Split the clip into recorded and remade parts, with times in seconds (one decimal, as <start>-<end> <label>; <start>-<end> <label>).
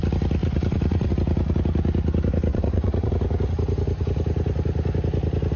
0.0-0.4 recorded; 0.4-1.1 remade; 1.1-2.5 recorded; 2.5-3.1 remade; 3.1-5.6 recorded